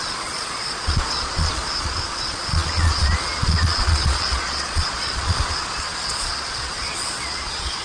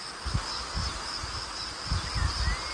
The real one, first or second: second